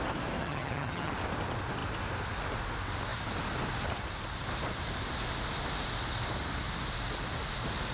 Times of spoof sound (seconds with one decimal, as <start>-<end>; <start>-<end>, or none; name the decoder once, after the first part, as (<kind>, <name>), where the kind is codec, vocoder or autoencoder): 0.4-1.1 (vocoder, HiFi-GAN)